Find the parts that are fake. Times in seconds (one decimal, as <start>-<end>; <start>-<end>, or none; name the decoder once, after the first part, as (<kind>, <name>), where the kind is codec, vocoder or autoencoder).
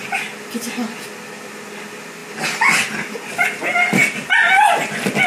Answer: none